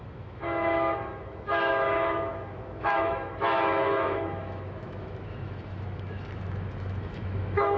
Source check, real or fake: fake